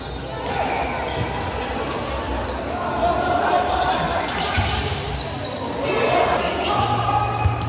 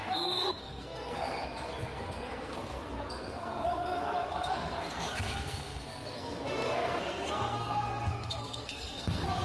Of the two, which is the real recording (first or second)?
first